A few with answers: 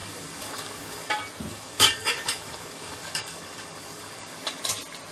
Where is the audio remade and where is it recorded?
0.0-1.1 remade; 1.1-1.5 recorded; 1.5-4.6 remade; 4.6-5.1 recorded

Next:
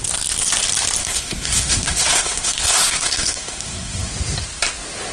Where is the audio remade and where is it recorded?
0.0-1.0 recorded; 1.0-4.1 remade; 4.1-5.1 recorded

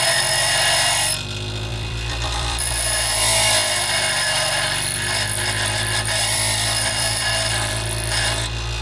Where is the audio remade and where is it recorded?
0.0-1.7 recorded; 1.7-3.2 remade; 3.2-3.6 recorded; 3.6-7.7 remade; 7.7-8.8 recorded